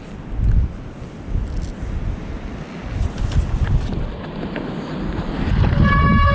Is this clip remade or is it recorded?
recorded